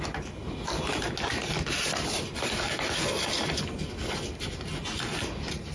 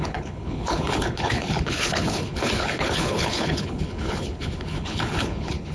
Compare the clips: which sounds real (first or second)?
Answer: first